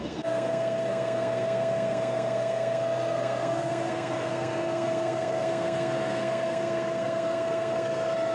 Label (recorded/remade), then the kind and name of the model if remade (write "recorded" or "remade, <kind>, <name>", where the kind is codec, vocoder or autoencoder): remade, codec, SNAC